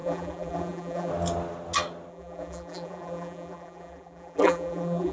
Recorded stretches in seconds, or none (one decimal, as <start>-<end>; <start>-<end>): 1.1-2.1